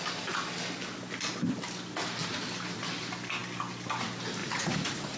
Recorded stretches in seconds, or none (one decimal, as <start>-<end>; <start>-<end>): 0.0-4.4

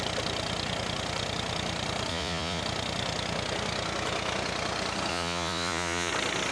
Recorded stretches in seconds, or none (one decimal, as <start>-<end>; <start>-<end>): 0.0-2.1; 2.6-5.1; 6.1-6.5

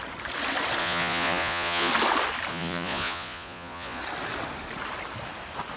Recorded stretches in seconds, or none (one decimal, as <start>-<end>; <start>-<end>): 0.0-0.8; 1.9-2.5; 4.0-5.8

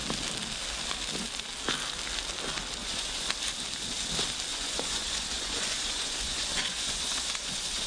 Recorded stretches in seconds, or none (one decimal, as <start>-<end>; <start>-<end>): 0.0-2.8; 3.3-4.5

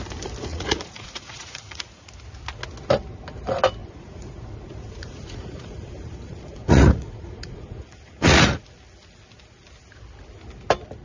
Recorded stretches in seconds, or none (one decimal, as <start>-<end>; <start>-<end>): 0.0-0.5; 2.1-3.8; 8.6-11.0

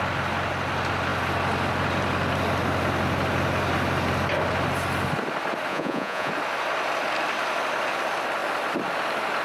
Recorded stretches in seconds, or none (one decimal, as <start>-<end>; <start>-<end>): 0.0-5.7; 6.3-9.4

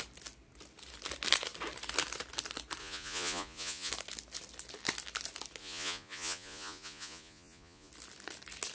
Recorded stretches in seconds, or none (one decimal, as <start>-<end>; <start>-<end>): 0.0-2.8; 3.9-5.6; 7.9-8.7

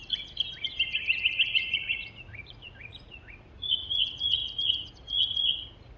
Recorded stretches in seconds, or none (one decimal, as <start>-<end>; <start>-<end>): 0.0-1.5